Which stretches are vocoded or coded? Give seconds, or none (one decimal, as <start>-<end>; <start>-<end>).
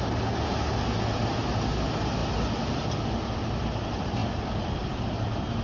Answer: none